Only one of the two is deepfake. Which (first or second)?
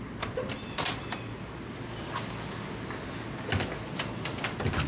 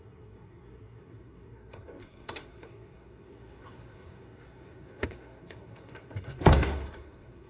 second